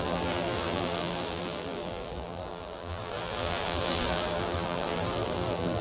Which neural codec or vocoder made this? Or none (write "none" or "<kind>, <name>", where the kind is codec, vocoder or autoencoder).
vocoder, BigVGAN v2